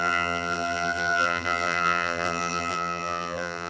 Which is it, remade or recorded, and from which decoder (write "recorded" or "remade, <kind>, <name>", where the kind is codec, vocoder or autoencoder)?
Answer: remade, vocoder, BigVGAN v2